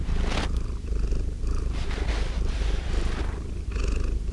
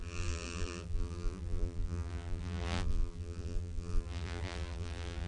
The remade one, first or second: second